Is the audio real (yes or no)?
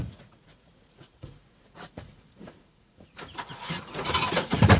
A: no